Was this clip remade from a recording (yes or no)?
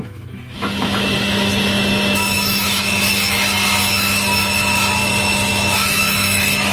yes